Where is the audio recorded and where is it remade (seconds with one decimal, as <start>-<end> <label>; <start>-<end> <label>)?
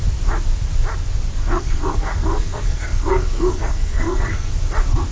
0.0-1.4 recorded; 1.4-4.5 remade; 4.5-5.1 recorded